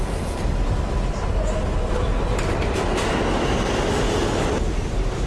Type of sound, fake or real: real